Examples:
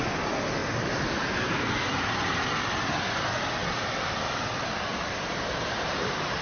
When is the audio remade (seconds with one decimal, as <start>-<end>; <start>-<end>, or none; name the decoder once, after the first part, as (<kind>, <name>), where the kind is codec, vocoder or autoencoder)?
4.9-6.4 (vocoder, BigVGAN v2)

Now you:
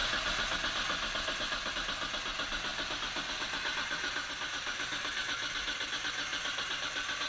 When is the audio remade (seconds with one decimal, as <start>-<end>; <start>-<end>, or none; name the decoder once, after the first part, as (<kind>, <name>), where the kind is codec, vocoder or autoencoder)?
6.3-7.3 (vocoder, BigVGAN v2)

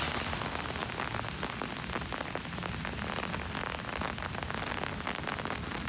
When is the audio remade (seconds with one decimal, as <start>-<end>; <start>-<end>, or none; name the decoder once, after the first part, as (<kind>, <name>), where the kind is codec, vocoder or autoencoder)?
none

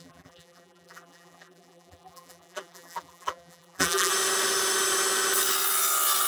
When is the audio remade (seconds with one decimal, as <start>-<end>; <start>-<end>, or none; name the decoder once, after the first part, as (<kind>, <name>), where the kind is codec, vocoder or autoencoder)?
0.0-4.1 (vocoder, BigVGAN v2)

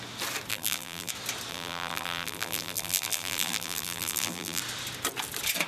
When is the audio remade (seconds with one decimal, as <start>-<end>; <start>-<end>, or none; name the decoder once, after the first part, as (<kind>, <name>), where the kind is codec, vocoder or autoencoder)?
0.5-1.1 (vocoder, BigVGAN v2); 1.5-4.6

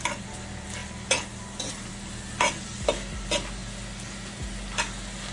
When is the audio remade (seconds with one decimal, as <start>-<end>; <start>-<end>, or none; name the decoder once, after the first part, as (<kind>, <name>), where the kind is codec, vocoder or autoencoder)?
none

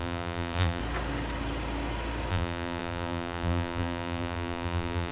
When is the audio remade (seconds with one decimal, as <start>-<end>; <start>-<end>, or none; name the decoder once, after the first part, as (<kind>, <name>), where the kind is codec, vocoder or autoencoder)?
0.0-0.8 (vocoder, BigVGAN v2); 2.3-5.1

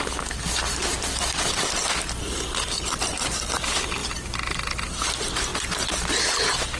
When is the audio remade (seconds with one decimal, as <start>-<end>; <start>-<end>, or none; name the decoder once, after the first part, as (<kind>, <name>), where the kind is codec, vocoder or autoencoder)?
none